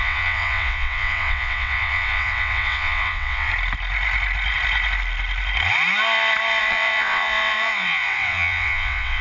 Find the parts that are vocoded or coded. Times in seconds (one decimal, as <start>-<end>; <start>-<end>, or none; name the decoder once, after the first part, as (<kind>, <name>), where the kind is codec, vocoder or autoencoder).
0.0-3.5 (vocoder, WaveNeXt); 6.6-9.2